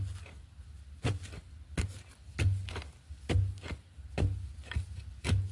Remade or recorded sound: recorded